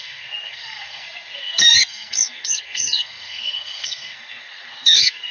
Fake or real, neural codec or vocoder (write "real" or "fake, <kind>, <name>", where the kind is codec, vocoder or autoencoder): fake, codec, SNAC